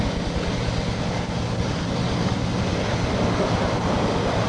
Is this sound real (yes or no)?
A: yes